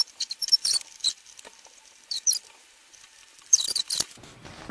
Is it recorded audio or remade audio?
remade